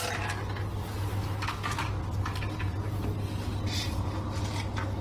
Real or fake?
real